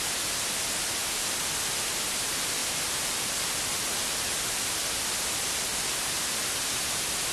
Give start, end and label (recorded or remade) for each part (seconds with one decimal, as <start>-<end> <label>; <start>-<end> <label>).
0.0-7.3 recorded